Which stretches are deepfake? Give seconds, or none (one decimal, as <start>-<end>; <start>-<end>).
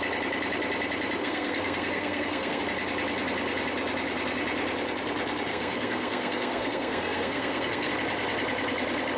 1.2-2.6; 5.5-7.9